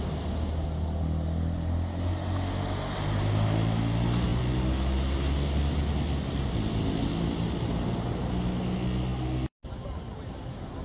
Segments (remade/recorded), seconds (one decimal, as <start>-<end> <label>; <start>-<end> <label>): 0.0-10.8 recorded